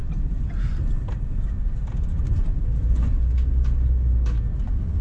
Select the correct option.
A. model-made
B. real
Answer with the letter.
B